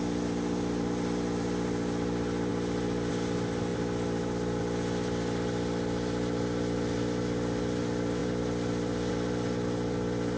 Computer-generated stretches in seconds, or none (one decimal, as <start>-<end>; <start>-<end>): 3.7-4.6; 8.2-9.1